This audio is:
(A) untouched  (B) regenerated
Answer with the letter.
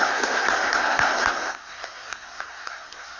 B